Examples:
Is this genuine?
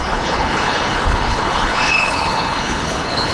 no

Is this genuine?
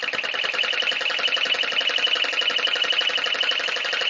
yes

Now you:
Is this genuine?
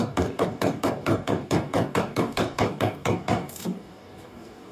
no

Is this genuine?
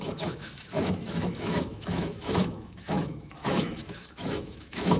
no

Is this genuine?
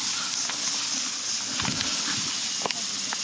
yes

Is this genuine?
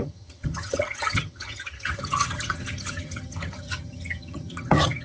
no